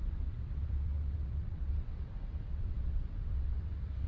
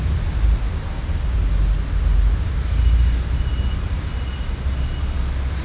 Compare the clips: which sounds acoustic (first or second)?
second